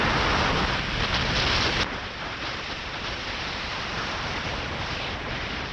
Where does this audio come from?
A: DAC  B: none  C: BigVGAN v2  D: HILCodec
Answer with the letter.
B